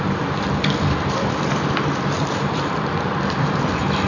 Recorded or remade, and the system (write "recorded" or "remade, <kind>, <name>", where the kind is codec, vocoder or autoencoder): remade, vocoder, BigVGAN v2